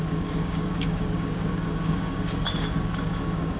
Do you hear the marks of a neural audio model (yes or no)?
yes